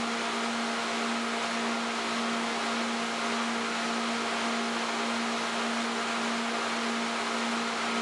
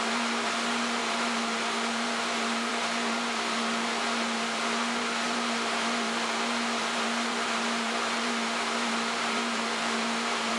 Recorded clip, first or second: first